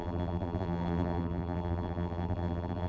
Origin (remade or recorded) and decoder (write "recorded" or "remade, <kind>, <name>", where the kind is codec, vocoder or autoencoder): remade, vocoder, BigVGAN v2